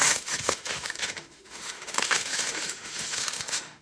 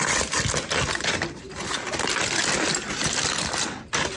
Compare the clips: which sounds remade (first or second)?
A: first